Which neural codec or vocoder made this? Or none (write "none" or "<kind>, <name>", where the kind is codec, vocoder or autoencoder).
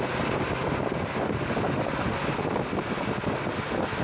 none